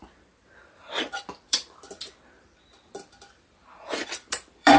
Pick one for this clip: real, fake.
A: fake